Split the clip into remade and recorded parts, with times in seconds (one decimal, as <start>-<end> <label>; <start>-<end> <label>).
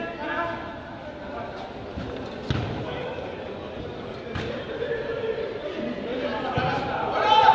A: 0.0-7.5 recorded